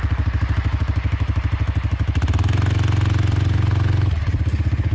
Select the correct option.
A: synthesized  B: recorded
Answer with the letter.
B